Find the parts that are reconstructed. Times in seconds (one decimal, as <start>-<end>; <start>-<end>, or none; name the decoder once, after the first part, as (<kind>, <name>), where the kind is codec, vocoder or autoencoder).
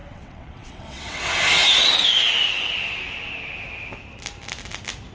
0.0-1.2 (vocoder, WaveNeXt)